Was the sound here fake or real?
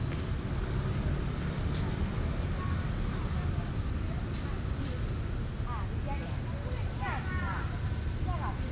real